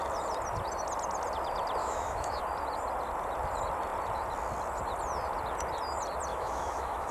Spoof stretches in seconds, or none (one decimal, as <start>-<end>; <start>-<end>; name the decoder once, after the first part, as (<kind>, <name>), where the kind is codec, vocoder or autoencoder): 1.8-2.4 (autoencoder, DAC-VAE); 6.3-7.1

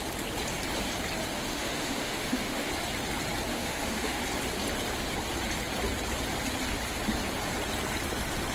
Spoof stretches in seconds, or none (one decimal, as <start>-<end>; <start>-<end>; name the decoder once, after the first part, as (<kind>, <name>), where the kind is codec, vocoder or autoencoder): 1.3-2.7 (autoencoder, DAC-VAE); 3.5-4.2